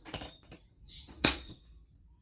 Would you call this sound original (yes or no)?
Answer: no